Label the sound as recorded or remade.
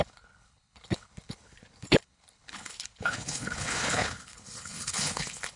remade